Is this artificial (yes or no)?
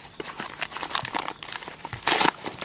yes